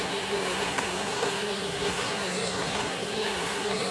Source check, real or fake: fake